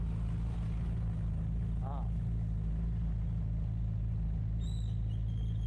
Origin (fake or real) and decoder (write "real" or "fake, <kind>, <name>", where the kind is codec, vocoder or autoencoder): real